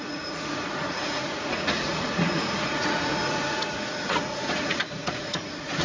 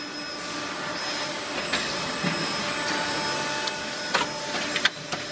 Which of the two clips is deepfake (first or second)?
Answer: first